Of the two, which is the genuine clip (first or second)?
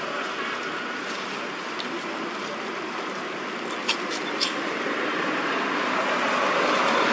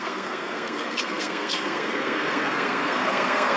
first